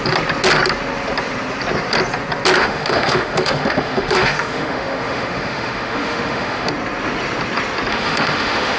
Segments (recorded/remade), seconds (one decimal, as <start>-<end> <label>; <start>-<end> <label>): 0.0-2.6 recorded; 2.6-6.7 remade; 6.7-7.9 recorded; 7.9-8.8 remade

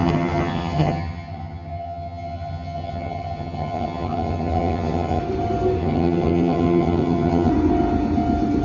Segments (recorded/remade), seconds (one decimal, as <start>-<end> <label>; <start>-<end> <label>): 0.0-5.2 remade; 5.2-5.8 recorded; 5.8-7.5 remade; 7.5-8.6 recorded

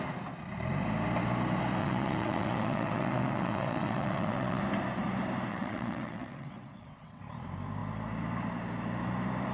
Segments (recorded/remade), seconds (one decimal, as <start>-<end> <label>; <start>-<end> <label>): 0.0-1.8 recorded; 1.8-4.6 remade; 4.6-5.5 recorded; 5.5-7.2 remade; 7.2-9.5 recorded

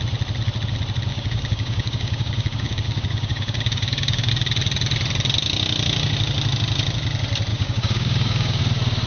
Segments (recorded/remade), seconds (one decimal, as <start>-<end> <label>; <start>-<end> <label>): 0.0-1.1 recorded; 1.1-4.3 remade; 4.3-7.5 recorded; 7.5-8.6 remade; 8.6-9.1 recorded

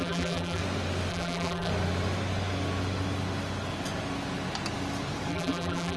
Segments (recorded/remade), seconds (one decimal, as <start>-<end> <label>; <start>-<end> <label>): 0.0-0.6 remade; 0.6-1.1 recorded; 1.1-1.7 remade; 1.7-5.3 recorded; 5.3-6.0 remade